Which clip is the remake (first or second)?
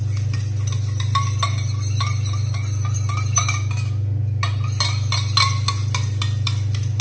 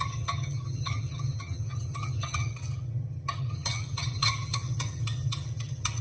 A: second